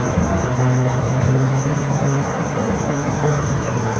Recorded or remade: remade